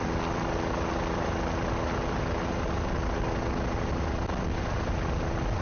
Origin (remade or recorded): recorded